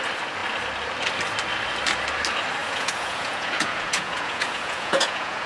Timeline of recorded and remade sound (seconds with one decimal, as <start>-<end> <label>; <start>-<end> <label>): 0.0-2.6 recorded; 2.6-5.5 remade